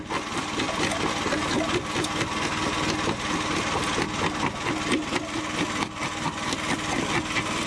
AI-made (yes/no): no